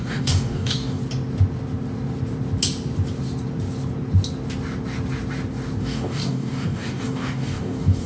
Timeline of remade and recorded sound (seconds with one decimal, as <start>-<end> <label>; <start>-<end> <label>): 0.0-1.0 remade; 1.0-5.8 recorded; 5.8-8.1 remade